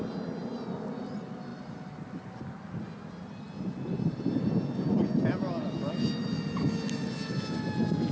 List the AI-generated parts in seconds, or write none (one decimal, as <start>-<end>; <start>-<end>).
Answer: none